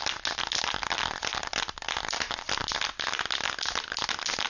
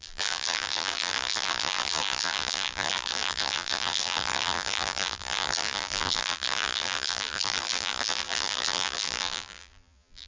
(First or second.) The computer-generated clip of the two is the second